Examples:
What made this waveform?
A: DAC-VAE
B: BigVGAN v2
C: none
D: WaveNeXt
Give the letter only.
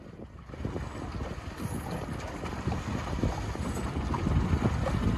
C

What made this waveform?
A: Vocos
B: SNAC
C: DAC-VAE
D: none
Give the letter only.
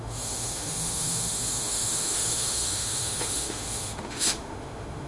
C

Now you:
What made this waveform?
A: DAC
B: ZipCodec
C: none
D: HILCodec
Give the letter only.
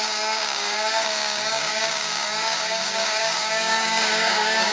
A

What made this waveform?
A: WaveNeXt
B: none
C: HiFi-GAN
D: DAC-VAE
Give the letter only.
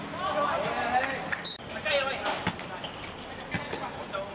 B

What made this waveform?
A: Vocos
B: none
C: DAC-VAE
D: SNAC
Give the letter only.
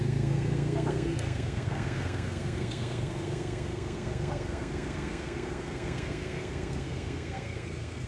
D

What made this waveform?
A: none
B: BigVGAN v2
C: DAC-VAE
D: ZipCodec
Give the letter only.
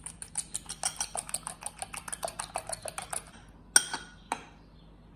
A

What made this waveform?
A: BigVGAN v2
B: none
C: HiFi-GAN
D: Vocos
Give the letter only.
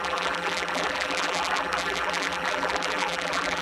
A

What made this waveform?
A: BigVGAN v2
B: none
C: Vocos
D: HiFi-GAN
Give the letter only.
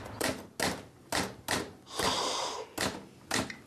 B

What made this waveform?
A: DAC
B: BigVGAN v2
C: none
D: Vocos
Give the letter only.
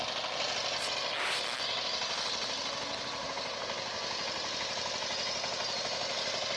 C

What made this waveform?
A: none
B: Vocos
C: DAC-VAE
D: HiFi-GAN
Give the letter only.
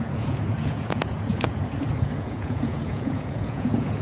B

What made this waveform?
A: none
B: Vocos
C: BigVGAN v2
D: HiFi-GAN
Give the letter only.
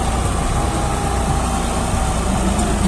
A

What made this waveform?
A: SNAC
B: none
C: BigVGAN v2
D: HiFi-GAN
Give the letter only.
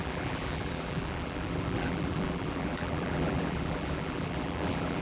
C